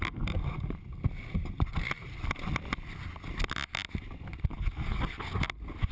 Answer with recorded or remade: recorded